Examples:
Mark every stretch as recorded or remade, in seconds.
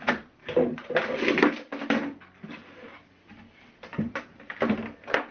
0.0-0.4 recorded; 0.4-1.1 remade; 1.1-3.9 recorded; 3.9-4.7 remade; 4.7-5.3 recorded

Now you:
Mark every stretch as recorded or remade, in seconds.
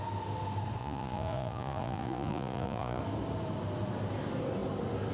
0.0-0.8 recorded; 0.8-3.0 remade; 3.0-5.1 recorded